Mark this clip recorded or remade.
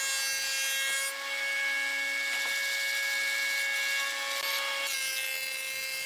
recorded